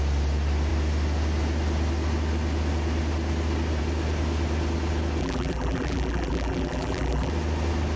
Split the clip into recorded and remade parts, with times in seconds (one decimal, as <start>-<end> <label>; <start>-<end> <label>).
0.0-5.2 recorded; 5.2-7.3 remade; 7.3-8.0 recorded